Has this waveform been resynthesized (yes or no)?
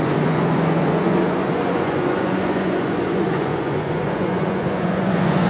yes